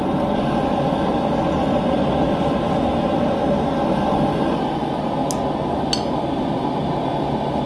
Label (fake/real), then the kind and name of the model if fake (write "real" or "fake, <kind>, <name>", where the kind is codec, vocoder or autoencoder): real